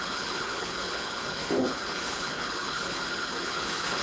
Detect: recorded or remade remade